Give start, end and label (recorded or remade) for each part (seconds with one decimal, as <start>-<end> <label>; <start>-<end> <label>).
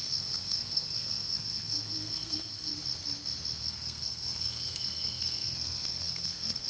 0.0-2.7 remade; 2.7-3.6 recorded; 3.6-6.7 remade